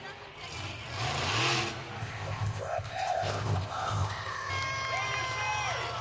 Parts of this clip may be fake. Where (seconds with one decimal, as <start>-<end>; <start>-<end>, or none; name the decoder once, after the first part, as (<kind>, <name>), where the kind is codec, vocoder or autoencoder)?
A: 2.0-4.5 (codec, ZipCodec)